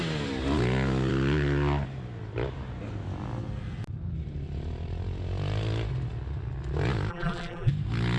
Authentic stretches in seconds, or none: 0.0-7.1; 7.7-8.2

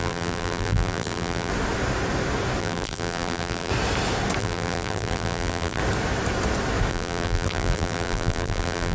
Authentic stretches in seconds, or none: 1.5-2.6; 3.7-4.4; 5.8-6.9

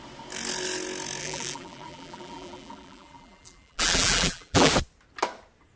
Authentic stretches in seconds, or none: 0.0-1.2; 4.7-5.8

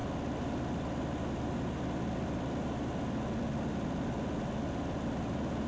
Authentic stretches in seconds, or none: 0.0-5.7

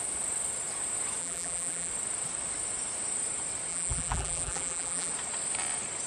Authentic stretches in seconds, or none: 0.0-1.2; 1.9-3.7; 5.1-6.1

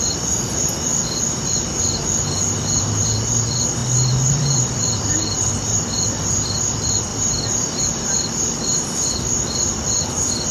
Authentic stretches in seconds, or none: 0.9-3.0